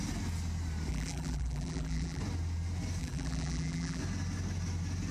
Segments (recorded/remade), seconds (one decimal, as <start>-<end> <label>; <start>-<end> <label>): 0.0-0.9 recorded; 0.9-2.2 remade; 2.2-3.0 recorded; 3.0-4.0 remade; 4.0-5.1 recorded